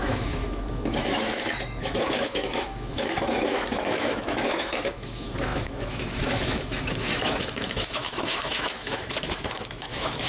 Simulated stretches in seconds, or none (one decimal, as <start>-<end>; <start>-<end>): 0.0-10.3